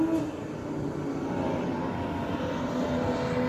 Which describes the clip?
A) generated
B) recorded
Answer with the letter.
B